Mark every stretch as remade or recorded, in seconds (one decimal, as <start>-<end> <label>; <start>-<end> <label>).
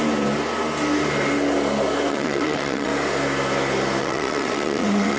0.0-2.1 recorded; 2.1-2.9 remade; 2.9-4.0 recorded; 4.0-5.2 remade